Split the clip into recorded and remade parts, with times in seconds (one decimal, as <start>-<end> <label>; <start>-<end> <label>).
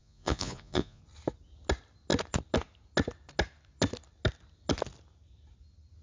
0.0-1.0 remade; 1.0-6.0 recorded